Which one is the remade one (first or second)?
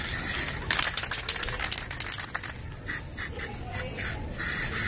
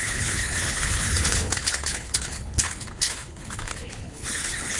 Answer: second